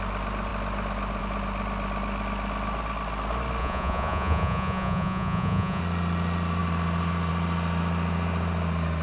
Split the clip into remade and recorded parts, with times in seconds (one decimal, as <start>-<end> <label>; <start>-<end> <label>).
0.0-3.6 recorded; 3.6-5.8 remade; 5.8-9.0 recorded

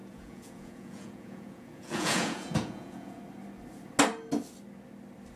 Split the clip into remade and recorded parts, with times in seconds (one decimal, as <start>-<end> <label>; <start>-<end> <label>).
0.0-3.2 remade; 3.2-5.4 recorded

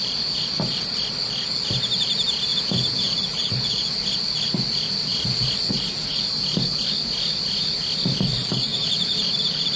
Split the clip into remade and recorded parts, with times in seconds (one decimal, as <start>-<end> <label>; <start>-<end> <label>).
0.0-2.5 recorded; 2.5-3.1 remade; 3.1-8.7 recorded; 8.7-9.2 remade; 9.2-9.8 recorded